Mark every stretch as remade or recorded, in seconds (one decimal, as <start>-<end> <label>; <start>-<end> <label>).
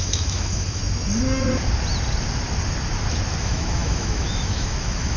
0.0-0.8 remade; 0.8-3.4 recorded; 3.4-5.2 remade